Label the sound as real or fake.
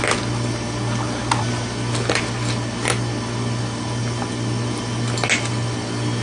real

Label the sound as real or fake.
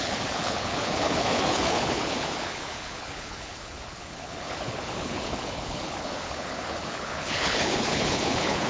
fake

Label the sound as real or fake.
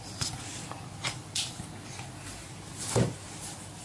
real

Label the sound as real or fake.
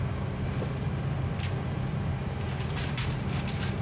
real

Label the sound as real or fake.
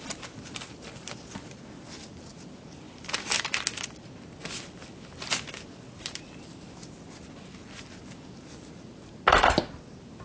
real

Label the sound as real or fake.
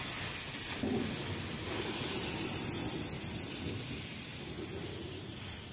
real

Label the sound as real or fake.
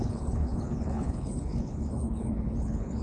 fake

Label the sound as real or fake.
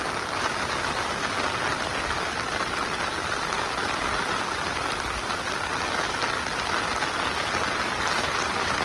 real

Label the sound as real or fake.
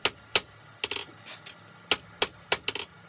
real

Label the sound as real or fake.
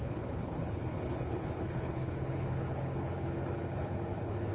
fake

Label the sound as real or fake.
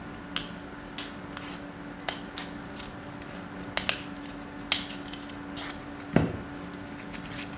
real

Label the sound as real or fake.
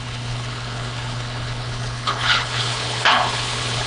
fake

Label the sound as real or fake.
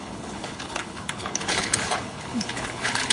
fake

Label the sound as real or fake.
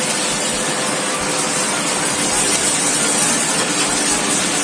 real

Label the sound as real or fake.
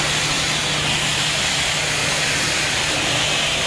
real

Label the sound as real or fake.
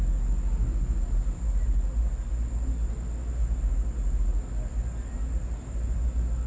real